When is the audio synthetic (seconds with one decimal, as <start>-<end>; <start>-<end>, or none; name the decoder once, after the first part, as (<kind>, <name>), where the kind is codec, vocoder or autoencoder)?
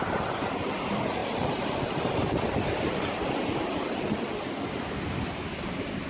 none